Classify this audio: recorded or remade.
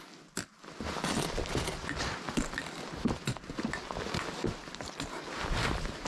recorded